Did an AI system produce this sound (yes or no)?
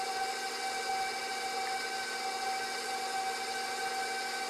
no